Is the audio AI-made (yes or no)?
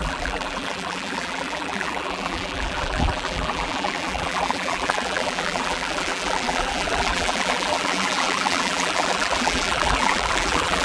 yes